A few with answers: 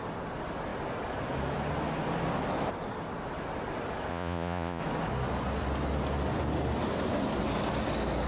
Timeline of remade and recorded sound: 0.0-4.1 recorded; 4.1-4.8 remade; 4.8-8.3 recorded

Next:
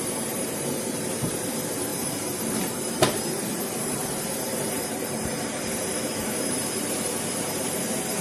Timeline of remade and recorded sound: 0.0-8.2 remade

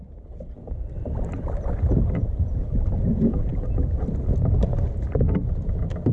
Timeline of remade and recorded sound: 0.0-6.1 recorded

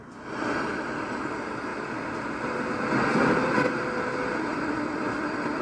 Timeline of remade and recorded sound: 0.0-5.6 recorded

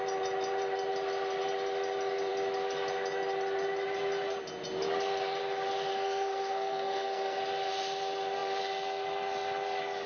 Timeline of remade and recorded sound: 0.0-5.9 recorded; 5.9-7.4 remade; 7.4-10.1 recorded

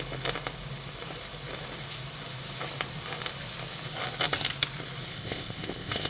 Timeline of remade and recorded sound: 0.0-5.1 recorded; 5.1-6.1 remade